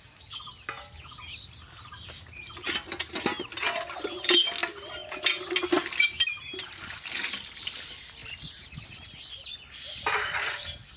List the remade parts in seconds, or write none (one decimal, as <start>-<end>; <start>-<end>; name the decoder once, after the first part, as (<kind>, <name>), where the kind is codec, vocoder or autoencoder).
none